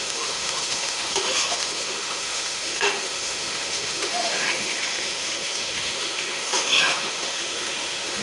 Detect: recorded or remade remade